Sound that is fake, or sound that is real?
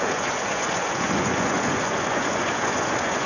fake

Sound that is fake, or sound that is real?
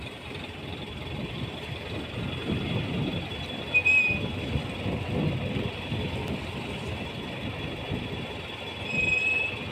real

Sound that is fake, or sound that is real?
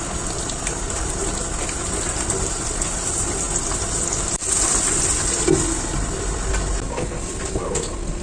real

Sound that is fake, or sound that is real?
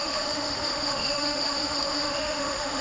fake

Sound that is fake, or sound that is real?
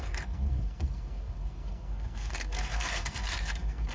fake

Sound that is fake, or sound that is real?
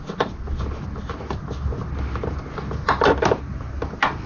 real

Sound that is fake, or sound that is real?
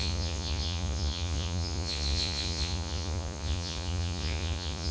fake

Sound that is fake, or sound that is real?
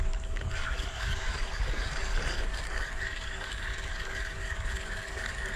fake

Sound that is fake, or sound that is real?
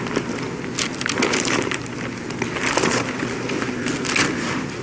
real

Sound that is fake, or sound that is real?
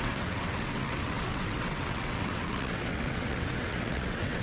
fake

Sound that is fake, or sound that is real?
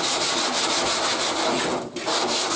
real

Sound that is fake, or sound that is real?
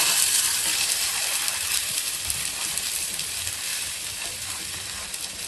fake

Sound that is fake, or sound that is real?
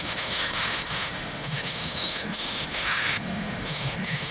fake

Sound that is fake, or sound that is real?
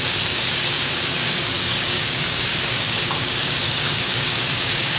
fake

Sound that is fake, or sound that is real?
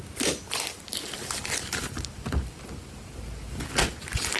real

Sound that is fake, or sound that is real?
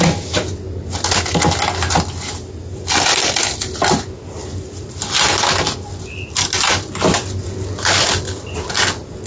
real